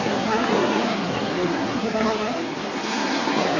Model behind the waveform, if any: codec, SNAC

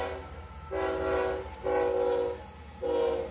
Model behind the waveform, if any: none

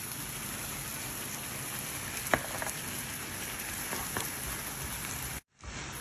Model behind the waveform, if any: none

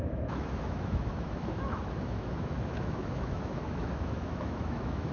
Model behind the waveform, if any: autoencoder, DAC-VAE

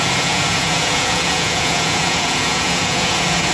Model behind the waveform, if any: vocoder, Vocos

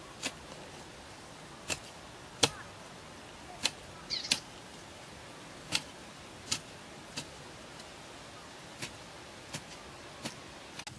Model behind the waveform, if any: none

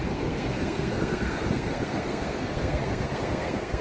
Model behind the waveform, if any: codec, SNAC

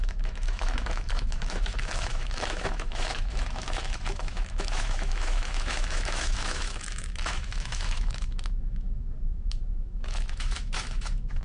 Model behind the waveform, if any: autoencoder, DAC-VAE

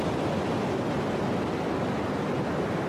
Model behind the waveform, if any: none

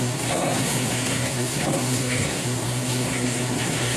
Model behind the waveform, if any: codec, SNAC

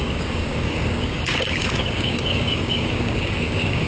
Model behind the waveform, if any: codec, DAC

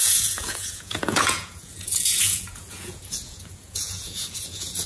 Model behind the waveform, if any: vocoder, Vocos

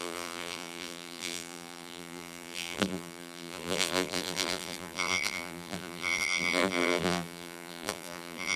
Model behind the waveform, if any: vocoder, BigVGAN v2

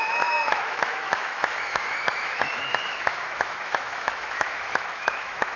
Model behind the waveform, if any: autoencoder, DAC-VAE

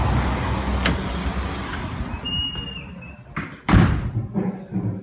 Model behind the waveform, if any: none